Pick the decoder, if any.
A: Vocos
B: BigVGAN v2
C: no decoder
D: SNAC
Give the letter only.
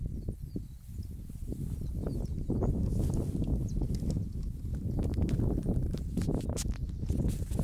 C